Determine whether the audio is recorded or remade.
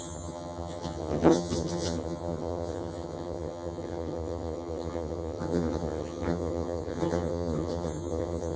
remade